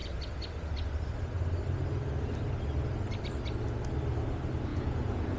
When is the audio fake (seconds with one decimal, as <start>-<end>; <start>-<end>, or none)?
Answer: 4.7-5.4